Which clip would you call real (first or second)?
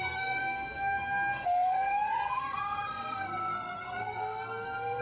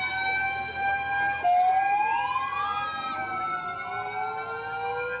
second